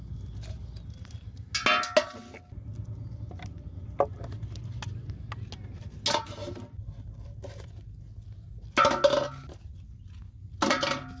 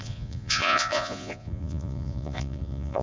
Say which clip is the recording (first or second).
first